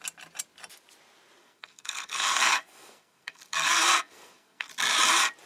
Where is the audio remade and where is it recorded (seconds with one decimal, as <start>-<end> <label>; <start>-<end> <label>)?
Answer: 0.0-1.4 recorded; 1.4-4.7 remade; 4.7-5.5 recorded